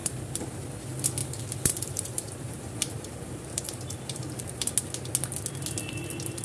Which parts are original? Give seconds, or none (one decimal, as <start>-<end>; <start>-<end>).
0.6-1.2; 4.7-6.4